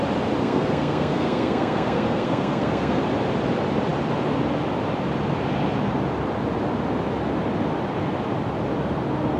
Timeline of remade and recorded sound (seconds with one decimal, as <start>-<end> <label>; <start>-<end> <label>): 0.0-0.4 recorded; 0.4-3.0 remade; 3.0-9.4 recorded